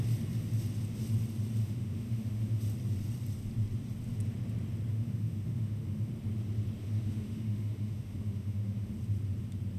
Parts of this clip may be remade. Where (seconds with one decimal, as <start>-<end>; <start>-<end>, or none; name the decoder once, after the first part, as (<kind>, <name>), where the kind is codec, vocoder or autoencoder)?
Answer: 1.6-2.6 (autoencoder, DAC-VAE); 4.9-6.1; 6.8-8.9